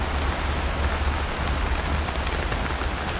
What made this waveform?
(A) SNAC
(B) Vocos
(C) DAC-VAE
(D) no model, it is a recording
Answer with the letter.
D